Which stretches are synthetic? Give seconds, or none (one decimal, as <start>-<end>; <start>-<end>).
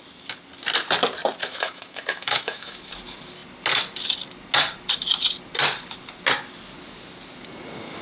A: 1.4-2.9